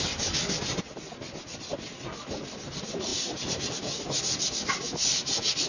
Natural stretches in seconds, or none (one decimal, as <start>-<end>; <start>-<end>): 0.0-5.7